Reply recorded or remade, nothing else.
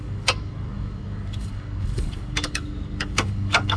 remade